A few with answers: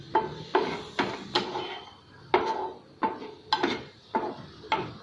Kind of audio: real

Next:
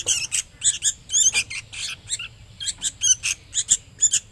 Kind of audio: real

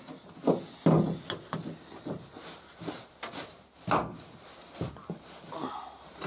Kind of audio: real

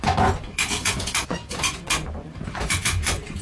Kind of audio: fake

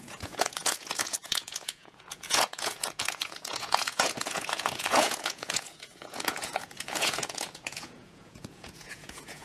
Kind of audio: fake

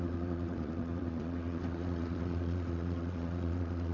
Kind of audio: fake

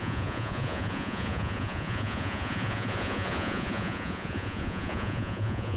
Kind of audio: fake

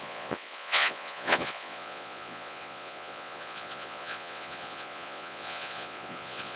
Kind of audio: fake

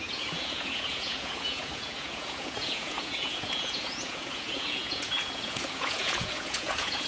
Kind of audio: fake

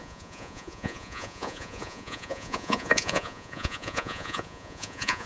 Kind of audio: fake